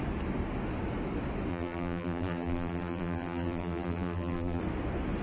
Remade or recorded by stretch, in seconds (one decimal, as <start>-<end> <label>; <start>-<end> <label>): 0.0-1.5 recorded; 1.5-4.6 remade; 4.6-5.2 recorded